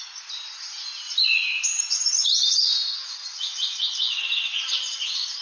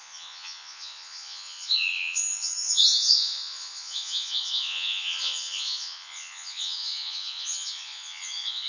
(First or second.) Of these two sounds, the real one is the first